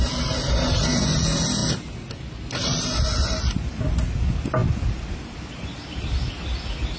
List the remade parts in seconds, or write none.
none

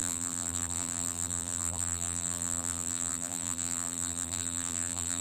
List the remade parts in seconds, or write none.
0.0-5.2 (vocoder, BigVGAN v2)

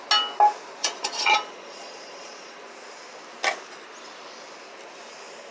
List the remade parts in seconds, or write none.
0.8-2.6 (vocoder, Vocos)

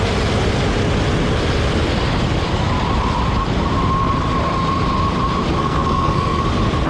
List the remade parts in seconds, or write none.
5.6-6.4 (codec, SNAC)

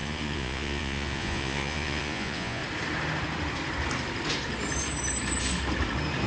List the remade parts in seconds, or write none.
0.0-2.6 (vocoder, Vocos)

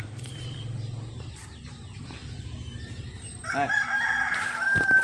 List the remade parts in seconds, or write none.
0.0-2.2 (vocoder, BigVGAN v2); 3.0-5.0

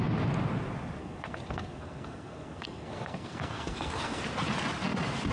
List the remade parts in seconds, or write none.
1.0-4.2 (codec, SNAC)